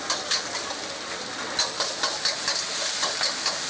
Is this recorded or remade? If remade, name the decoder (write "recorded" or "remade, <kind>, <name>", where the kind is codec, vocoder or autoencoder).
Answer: recorded